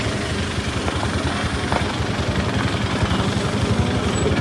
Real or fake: fake